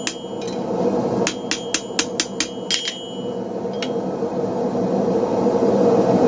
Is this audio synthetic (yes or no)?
no